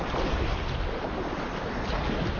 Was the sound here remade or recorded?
recorded